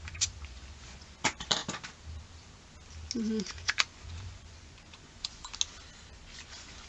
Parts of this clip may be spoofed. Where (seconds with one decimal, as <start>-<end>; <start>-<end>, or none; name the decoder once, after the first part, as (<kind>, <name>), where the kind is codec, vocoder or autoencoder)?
0.0-1.6 (vocoder, Vocos); 3.4-5.5; 6.1-6.9